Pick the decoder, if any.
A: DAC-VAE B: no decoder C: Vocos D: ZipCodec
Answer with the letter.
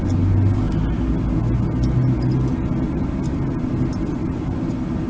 B